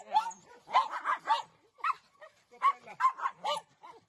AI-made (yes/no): yes